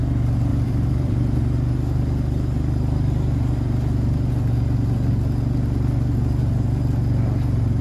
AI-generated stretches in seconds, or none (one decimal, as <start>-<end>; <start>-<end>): 0.5-1.4